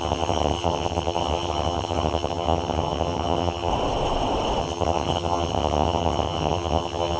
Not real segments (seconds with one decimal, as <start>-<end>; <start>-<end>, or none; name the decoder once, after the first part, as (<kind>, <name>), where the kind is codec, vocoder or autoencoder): 0.0-3.7 (vocoder, HiFi-GAN); 4.6-7.2

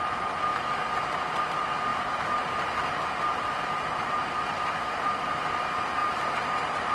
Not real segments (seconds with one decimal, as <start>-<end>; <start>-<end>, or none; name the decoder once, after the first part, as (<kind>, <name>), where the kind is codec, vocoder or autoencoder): 6.0-6.9 (vocoder, BigVGAN v2)

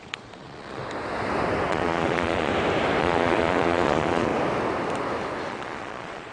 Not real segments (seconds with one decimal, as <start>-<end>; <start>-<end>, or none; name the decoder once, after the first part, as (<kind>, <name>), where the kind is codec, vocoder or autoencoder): 0.0-0.8 (vocoder, Vocos); 1.7-2.5; 3.0-4.3; 5.5-6.3